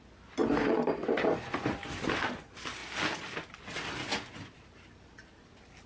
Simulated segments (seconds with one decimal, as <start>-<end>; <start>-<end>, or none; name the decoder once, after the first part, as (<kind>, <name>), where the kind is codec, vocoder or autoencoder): none